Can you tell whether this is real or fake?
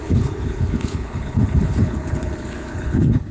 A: fake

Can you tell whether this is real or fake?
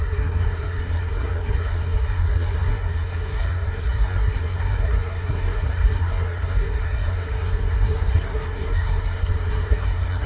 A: fake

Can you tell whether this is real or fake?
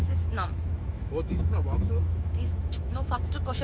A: fake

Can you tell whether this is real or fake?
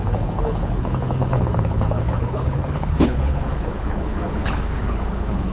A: fake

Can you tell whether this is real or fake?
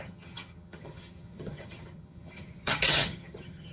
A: fake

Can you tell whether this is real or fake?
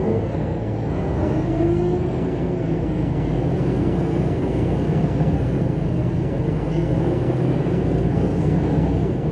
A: fake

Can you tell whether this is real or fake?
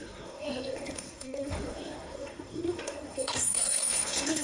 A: fake